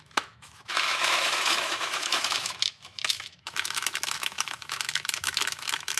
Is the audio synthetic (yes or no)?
yes